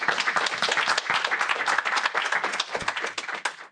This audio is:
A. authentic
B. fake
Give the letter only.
A